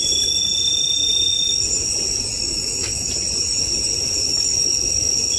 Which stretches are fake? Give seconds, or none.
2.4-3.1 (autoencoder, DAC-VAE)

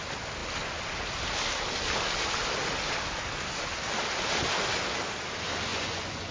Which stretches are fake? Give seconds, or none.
5.7-6.3 (vocoder, Vocos)

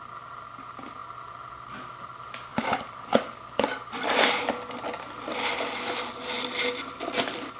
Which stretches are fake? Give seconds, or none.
2.5-4.4 (vocoder, BigVGAN v2)

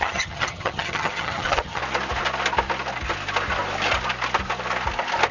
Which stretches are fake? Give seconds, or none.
0.0-1.8 (vocoder, HiFi-GAN)